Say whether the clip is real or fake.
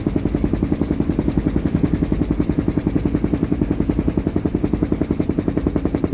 real